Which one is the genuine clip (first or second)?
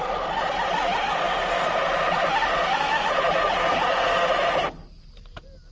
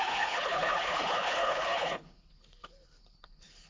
first